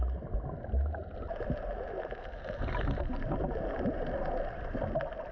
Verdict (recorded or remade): recorded